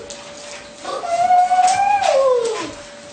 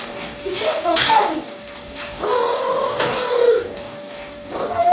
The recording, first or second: first